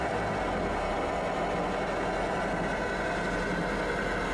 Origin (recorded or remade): recorded